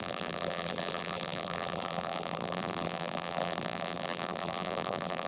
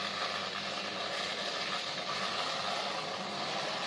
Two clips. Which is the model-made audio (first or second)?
first